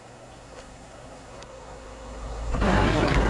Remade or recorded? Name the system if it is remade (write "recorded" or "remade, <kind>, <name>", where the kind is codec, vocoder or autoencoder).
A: remade, codec, SNAC